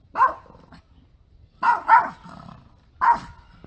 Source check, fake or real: real